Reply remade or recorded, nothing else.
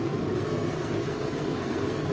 remade